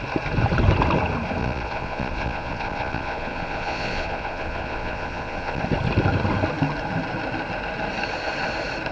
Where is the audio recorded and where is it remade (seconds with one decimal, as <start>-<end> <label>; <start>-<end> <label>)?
0.0-1.4 recorded; 1.4-5.6 remade; 5.6-8.9 recorded